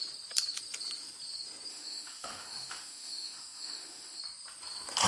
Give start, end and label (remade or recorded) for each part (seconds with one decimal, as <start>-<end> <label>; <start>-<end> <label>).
0.0-1.7 recorded; 1.7-4.2 remade; 4.2-5.1 recorded